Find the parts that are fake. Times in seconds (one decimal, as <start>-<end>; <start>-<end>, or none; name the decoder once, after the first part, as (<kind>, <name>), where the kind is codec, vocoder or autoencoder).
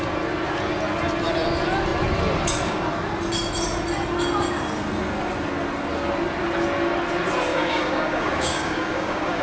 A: 7.5-9.4 (codec, DAC)